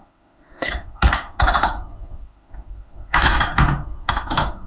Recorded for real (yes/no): no